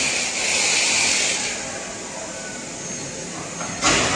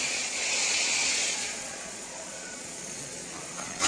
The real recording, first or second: first